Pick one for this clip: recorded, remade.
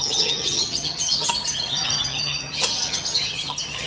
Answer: remade